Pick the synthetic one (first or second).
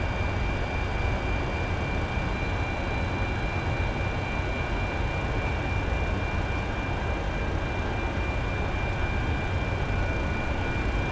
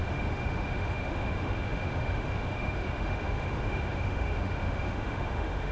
second